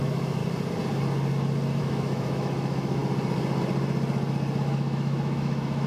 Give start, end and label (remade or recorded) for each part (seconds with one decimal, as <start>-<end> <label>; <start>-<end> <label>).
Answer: 0.0-0.4 remade; 0.4-1.8 recorded; 1.8-3.0 remade; 3.0-4.6 recorded; 4.6-5.9 remade